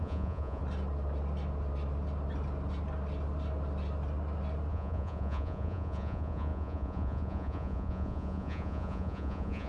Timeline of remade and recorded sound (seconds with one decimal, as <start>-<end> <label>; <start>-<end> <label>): 0.0-0.6 remade; 0.6-4.7 recorded; 4.7-9.7 remade